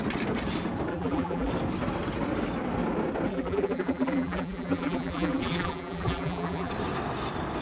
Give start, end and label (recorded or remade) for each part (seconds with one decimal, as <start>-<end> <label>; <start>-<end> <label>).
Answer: 0.0-0.9 recorded; 0.9-1.5 remade; 1.5-3.3 recorded; 3.3-6.7 remade; 6.7-7.6 recorded